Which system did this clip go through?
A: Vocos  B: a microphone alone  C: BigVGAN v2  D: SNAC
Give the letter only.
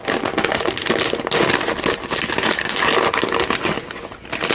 B